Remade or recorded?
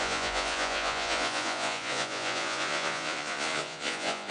remade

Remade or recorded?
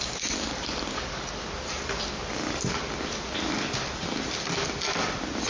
recorded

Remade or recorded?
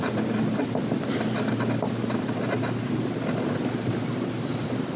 recorded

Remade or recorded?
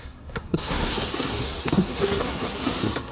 remade